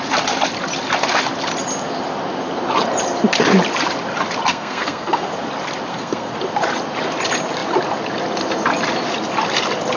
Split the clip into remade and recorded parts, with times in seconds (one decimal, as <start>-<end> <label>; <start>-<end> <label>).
0.0-4.5 recorded; 4.5-5.3 remade; 5.3-5.9 recorded; 5.9-6.4 remade; 6.4-10.0 recorded